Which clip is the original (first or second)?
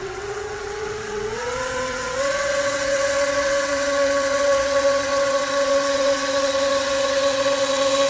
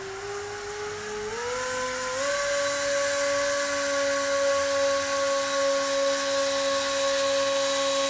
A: second